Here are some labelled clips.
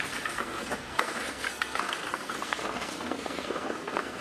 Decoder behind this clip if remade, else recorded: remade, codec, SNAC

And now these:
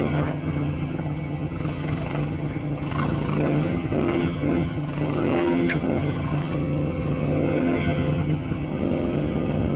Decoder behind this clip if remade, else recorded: remade, vocoder, HiFi-GAN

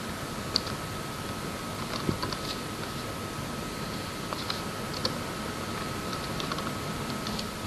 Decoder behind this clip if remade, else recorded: recorded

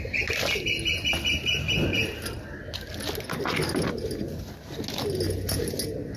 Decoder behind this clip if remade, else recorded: recorded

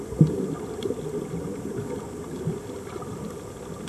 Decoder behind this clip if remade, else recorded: recorded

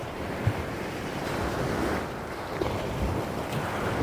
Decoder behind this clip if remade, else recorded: recorded